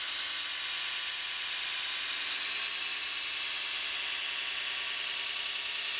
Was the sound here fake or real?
real